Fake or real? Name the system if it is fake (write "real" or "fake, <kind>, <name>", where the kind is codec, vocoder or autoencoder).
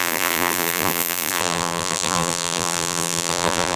fake, vocoder, BigVGAN v2